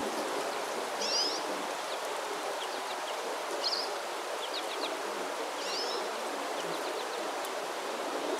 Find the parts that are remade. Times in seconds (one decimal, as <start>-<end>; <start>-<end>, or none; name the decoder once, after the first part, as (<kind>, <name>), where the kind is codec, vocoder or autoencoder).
none